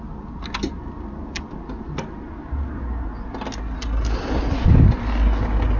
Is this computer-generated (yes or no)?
no